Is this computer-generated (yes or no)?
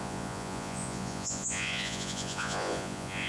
yes